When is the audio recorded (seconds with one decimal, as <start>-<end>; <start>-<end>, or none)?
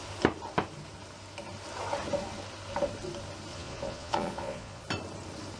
0.0-3.5; 4.8-5.6